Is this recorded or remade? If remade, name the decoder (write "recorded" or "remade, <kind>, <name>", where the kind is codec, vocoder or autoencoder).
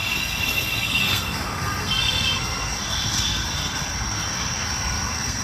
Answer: remade, codec, SNAC